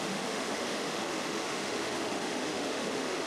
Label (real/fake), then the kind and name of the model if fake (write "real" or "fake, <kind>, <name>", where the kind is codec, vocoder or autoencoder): fake, autoencoder, DAC-VAE